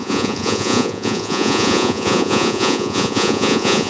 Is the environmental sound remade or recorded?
remade